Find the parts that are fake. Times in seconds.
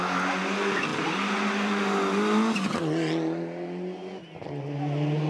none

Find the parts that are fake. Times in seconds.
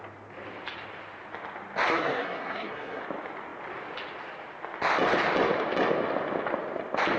1.9-3.0 (codec, SNAC)